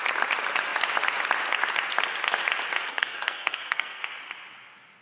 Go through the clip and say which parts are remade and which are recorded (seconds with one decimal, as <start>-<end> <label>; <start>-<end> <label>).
0.0-2.9 recorded; 2.9-4.0 remade; 4.0-5.0 recorded